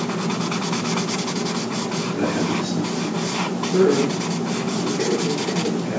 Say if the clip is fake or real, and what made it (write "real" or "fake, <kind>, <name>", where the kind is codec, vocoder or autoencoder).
real